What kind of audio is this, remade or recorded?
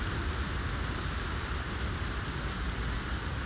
recorded